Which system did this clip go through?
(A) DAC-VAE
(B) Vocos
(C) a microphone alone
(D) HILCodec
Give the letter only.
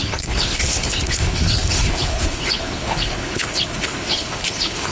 D